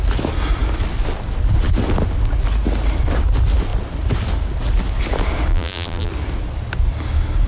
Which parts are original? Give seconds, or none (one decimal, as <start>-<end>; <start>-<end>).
0.0-5.5; 6.1-7.5